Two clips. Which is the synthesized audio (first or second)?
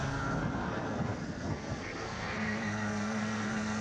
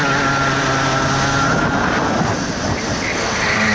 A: first